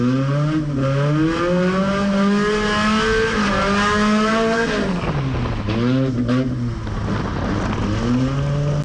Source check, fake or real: real